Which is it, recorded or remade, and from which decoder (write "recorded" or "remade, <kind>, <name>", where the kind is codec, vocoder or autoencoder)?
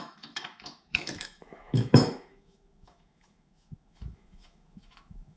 remade, autoencoder, DAC-VAE